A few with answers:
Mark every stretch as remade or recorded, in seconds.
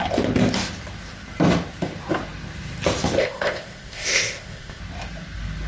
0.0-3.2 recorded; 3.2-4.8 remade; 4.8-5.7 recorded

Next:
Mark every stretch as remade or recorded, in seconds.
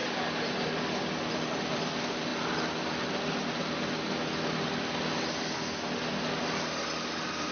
0.0-7.5 recorded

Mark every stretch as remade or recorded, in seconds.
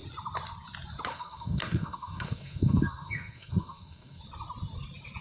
0.0-1.1 recorded; 1.1-4.2 remade; 4.2-5.2 recorded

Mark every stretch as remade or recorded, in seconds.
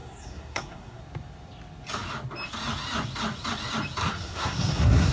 0.0-1.0 remade; 1.0-4.0 recorded; 4.0-5.1 remade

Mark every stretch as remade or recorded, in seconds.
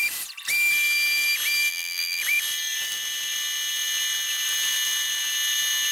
0.0-1.7 recorded; 1.7-2.2 remade; 2.2-5.9 recorded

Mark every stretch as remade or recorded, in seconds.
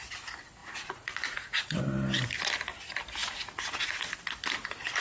0.0-0.6 recorded; 0.6-1.8 remade; 1.8-3.2 recorded; 3.2-4.1 remade; 4.1-5.0 recorded